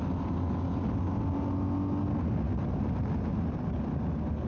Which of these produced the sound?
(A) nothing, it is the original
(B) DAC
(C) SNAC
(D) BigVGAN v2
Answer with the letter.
A